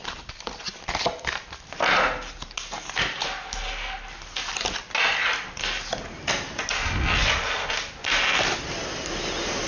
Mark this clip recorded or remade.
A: recorded